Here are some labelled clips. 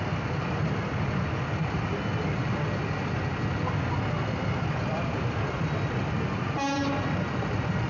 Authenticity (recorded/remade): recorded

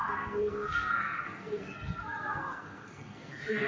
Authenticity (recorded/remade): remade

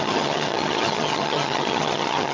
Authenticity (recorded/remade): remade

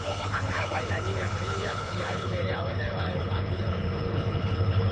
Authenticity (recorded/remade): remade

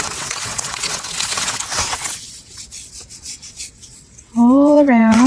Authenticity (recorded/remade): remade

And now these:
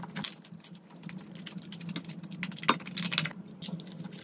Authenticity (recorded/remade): recorded